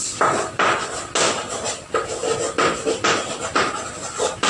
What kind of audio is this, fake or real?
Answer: real